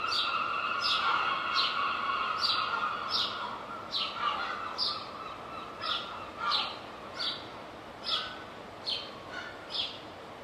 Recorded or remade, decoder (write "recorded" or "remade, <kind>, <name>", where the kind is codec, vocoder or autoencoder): recorded